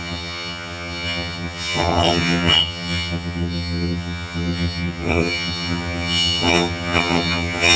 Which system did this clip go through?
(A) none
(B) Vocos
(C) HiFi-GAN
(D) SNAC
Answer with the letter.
C